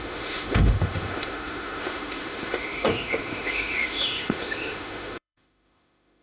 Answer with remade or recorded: remade